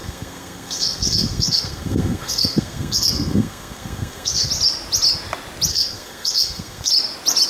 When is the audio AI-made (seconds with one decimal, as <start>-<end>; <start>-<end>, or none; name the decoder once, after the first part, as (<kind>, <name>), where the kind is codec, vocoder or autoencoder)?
0.0-4.5 (codec, SNAC); 5.7-6.9